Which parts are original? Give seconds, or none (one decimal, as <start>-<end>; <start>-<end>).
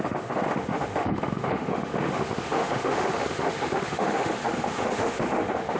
none